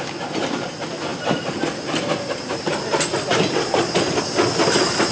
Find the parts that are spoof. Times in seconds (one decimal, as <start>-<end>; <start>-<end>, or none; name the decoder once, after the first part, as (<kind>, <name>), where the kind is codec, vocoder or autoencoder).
none